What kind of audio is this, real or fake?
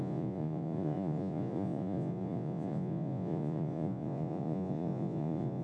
fake